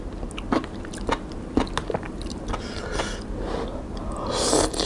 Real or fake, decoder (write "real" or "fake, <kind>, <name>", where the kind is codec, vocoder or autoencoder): real